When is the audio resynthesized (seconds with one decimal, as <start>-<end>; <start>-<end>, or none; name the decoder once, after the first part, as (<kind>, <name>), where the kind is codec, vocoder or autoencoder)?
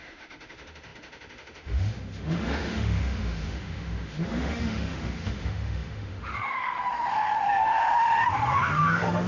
0.0-9.3 (autoencoder, DAC-VAE)